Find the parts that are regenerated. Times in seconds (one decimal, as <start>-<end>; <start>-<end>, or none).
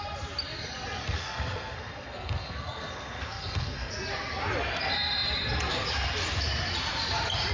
1.0-3.9